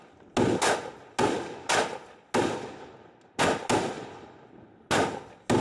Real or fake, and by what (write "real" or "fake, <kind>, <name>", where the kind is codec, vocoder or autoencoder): real